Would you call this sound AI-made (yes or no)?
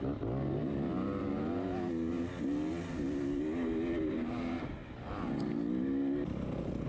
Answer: no